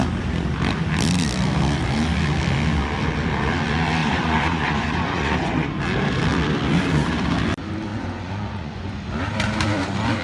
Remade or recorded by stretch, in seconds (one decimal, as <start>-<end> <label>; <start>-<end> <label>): 0.0-4.0 recorded; 4.0-5.8 remade; 5.8-7.9 recorded; 7.9-9.0 remade; 9.0-10.2 recorded